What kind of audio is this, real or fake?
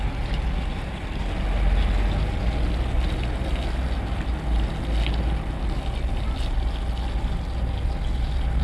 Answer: real